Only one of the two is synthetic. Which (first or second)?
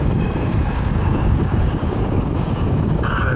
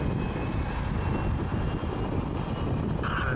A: first